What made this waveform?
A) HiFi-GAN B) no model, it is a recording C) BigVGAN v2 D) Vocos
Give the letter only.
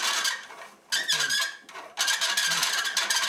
B